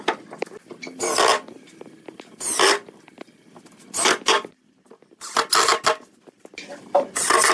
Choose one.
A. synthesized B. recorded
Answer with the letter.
B